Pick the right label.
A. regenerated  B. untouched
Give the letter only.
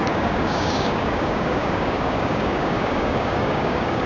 A